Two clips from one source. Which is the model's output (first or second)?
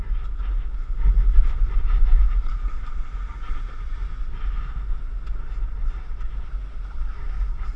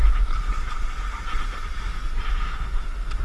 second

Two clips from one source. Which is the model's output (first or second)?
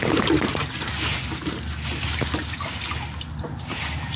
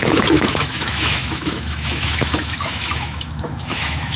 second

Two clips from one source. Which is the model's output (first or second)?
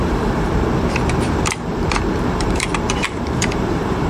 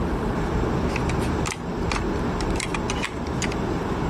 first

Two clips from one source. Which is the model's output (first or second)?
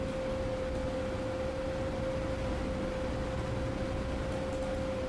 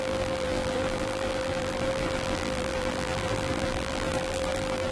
second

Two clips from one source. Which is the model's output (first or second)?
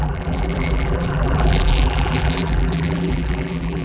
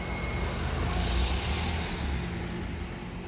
first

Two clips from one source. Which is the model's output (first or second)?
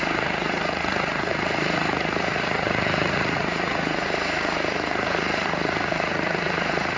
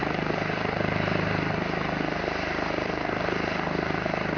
first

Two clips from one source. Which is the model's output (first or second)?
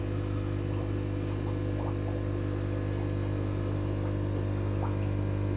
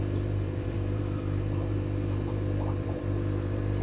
second